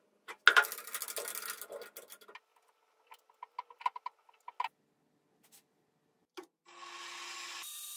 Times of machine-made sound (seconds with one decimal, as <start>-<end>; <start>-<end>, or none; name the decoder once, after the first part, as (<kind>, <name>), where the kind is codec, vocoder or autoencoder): none